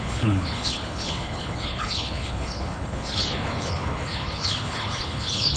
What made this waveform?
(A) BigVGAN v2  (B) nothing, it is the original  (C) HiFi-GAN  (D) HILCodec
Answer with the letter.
D